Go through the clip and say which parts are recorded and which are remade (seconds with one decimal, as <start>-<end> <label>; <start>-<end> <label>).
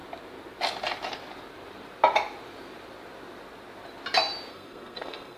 0.0-4.5 recorded; 4.5-5.4 remade